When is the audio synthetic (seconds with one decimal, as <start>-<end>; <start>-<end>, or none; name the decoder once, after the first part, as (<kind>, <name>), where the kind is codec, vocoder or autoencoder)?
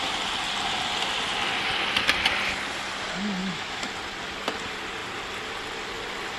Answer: 3.4-3.9 (autoencoder, DAC-VAE)